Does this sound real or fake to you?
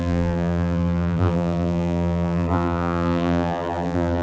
fake